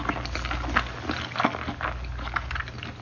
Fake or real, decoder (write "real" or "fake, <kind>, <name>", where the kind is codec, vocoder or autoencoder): real